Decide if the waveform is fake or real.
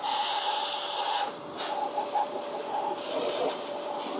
real